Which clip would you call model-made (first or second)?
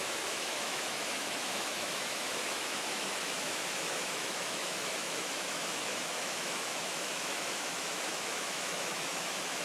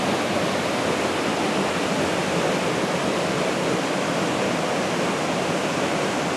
first